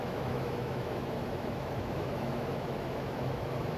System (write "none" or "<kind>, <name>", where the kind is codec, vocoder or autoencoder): autoencoder, DAC-VAE